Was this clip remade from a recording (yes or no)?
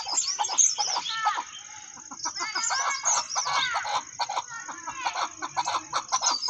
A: no